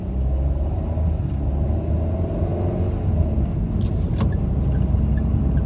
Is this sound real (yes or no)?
yes